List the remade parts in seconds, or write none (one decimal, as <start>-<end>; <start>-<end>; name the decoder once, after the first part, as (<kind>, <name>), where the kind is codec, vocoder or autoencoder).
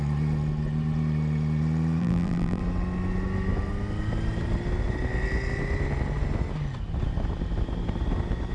2.0-2.6 (vocoder, BigVGAN v2)